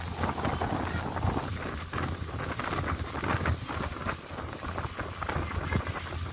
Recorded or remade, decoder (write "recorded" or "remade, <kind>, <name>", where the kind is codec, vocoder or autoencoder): recorded